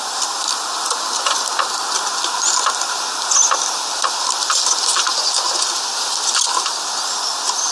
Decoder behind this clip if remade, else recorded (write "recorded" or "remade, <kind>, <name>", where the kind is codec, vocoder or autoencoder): recorded